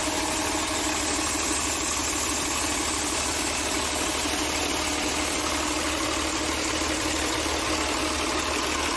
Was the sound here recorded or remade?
recorded